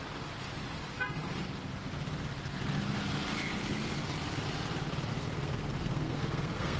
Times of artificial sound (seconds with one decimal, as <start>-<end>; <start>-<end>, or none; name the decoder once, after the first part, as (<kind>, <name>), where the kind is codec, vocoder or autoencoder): 5.1-6.8 (codec, SNAC)